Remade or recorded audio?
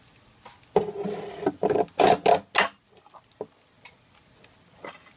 recorded